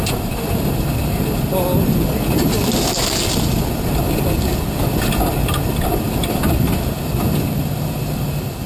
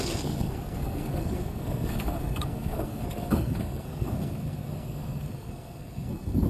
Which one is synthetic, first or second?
second